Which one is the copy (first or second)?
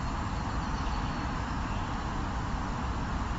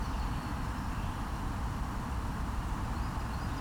second